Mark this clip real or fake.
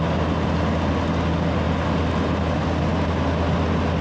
real